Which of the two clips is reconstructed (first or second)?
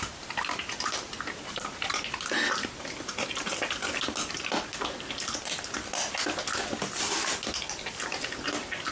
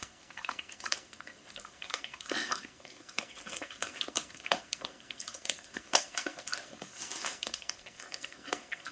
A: second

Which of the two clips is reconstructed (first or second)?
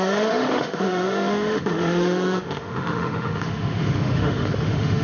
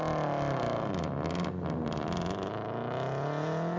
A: first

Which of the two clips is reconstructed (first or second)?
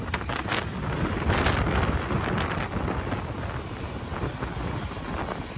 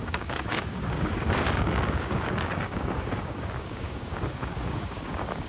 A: second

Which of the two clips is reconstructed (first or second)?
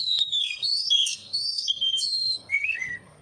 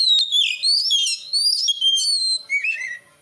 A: first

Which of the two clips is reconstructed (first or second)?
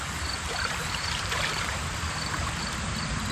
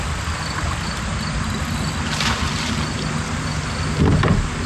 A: first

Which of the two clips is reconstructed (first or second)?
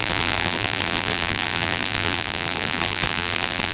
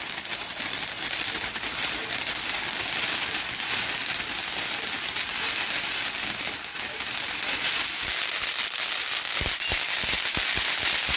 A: first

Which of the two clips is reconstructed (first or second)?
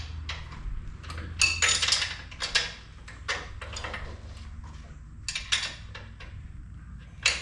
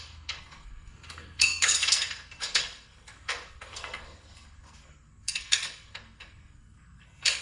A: second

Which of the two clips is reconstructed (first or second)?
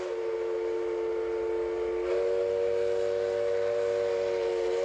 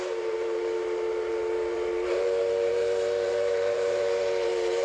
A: second